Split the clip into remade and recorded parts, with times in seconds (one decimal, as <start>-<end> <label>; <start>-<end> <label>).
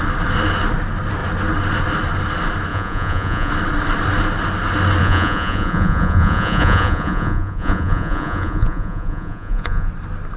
0.0-2.7 recorded; 2.7-3.5 remade; 3.5-5.0 recorded; 5.0-9.9 remade; 9.9-10.4 recorded